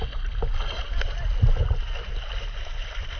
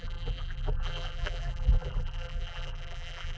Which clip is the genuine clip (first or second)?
first